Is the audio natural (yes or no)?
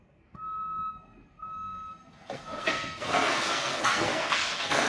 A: no